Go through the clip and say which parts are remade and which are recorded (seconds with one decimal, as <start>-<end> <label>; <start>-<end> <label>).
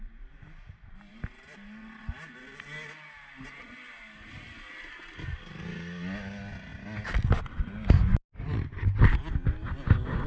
0.0-10.3 recorded